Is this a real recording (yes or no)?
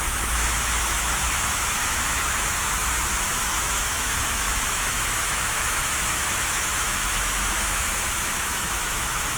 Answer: no